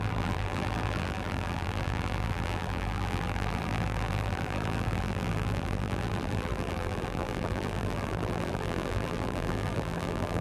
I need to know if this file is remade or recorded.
remade